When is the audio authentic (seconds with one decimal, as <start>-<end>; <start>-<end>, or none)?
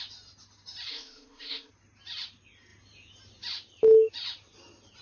0.0-0.9; 1.7-5.0